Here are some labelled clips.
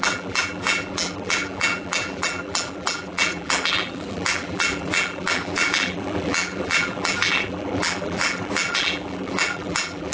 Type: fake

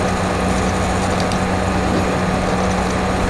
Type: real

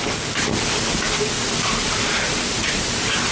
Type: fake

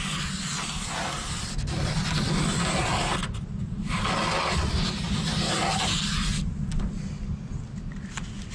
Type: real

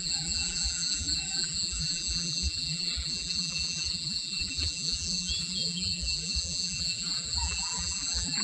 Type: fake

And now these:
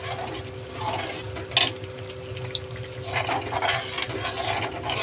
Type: real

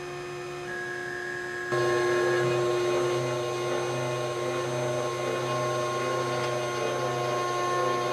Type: real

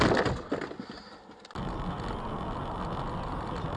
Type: real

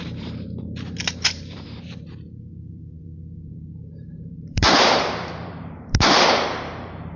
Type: fake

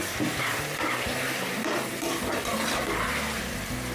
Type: real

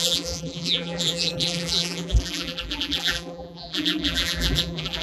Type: fake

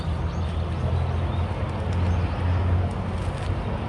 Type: real